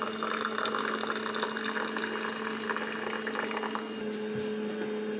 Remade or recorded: recorded